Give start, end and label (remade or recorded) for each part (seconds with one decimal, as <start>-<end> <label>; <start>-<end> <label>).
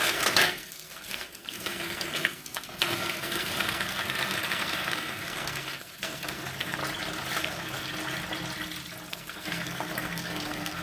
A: 0.0-6.8 remade; 6.8-7.4 recorded; 7.4-7.9 remade; 7.9-9.1 recorded; 9.1-10.8 remade